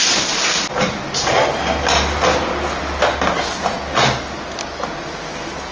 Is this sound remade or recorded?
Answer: recorded